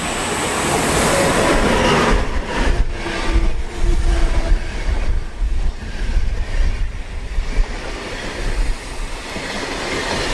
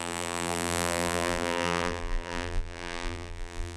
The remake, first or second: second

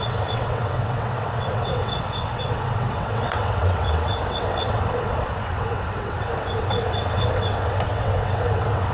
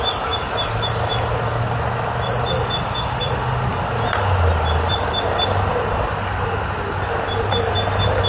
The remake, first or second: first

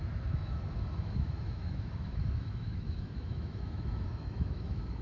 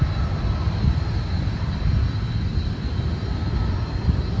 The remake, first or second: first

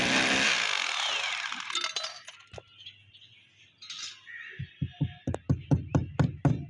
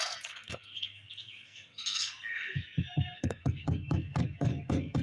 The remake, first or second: second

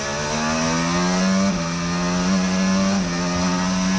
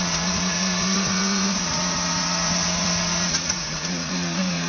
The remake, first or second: second